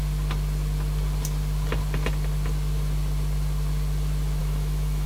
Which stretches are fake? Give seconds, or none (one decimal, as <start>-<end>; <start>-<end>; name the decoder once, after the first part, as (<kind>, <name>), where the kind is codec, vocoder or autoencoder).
4.4-5.1 (autoencoder, DAC-VAE)